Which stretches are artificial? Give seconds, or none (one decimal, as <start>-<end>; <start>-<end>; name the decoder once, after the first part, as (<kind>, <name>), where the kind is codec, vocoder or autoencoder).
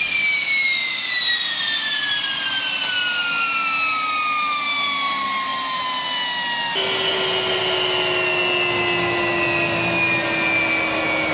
none